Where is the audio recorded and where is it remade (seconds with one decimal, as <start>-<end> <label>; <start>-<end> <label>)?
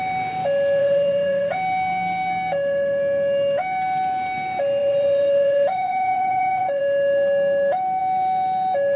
0.0-0.8 recorded; 0.8-1.5 remade; 1.5-4.8 recorded; 4.8-6.8 remade; 6.8-9.0 recorded